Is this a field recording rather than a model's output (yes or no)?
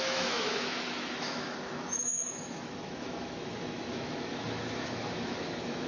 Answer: no